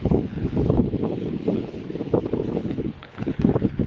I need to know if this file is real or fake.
fake